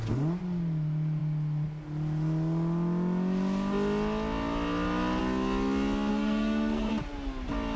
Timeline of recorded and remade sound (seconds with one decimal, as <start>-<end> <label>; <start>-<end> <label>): 0.0-6.1 recorded; 6.1-6.9 remade; 6.9-7.8 recorded